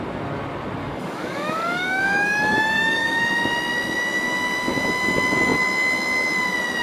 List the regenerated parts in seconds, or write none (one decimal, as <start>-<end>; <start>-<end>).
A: 0.8-3.2